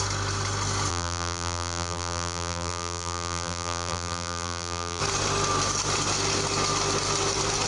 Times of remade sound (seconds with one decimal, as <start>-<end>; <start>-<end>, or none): 0.9-5.0